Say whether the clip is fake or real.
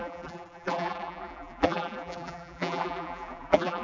fake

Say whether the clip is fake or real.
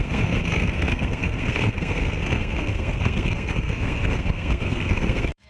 fake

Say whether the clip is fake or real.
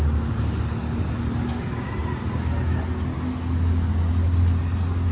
real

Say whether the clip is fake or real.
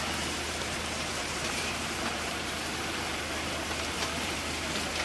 fake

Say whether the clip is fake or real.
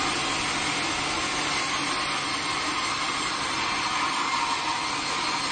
real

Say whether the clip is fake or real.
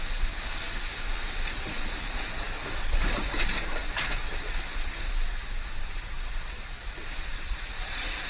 real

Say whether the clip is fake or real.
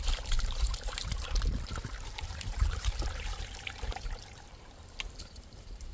fake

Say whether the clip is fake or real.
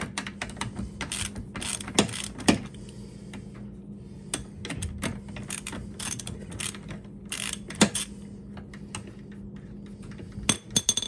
real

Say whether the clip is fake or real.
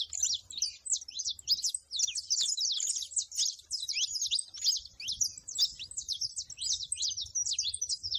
real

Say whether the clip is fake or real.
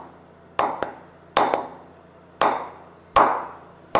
real